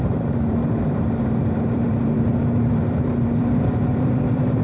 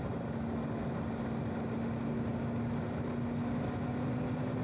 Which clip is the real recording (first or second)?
second